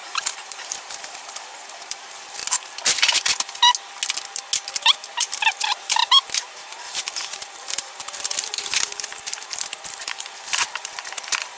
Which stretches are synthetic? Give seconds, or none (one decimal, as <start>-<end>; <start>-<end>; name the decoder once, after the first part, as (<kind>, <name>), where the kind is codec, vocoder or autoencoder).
0.0-2.4 (vocoder, BigVGAN v2); 5.2-11.6